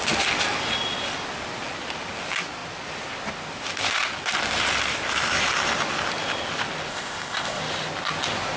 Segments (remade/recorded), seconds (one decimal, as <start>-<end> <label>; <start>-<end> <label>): 0.0-6.9 recorded; 6.9-7.6 remade; 7.6-8.6 recorded